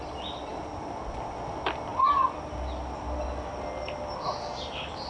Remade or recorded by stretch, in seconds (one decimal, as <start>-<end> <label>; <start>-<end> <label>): 0.0-5.1 recorded